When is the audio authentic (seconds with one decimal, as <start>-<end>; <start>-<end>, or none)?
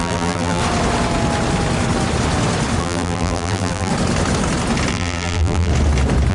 0.6-2.8; 3.9-4.9; 5.7-6.3